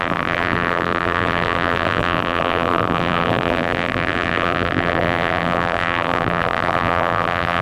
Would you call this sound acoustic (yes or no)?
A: no